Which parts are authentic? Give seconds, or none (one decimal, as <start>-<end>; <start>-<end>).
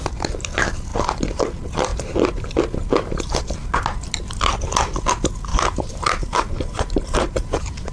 0.0-0.9; 1.4-5.5